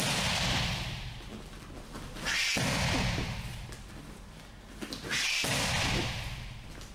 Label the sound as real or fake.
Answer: real